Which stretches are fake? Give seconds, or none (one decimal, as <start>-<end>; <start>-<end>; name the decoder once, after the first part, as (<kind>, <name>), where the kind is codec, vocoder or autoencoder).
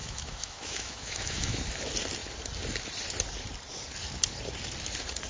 0.0-1.6 (autoencoder, DAC-VAE)